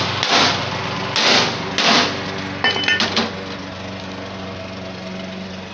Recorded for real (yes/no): yes